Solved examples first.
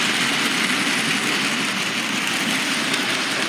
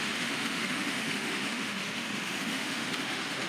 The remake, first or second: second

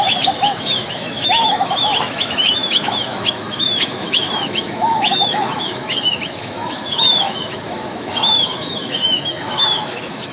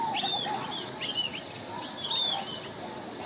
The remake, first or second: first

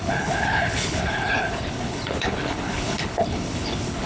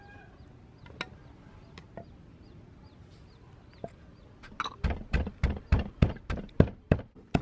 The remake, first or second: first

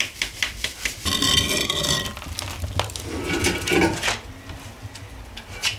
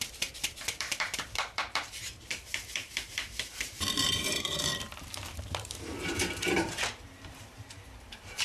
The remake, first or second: second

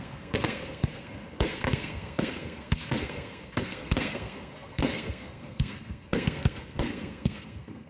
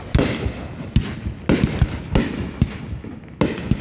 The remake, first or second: first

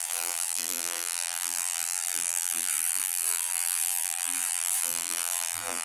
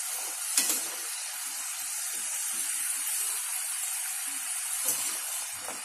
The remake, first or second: first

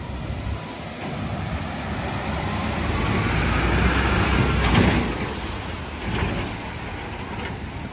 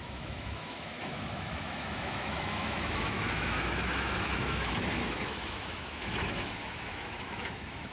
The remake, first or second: second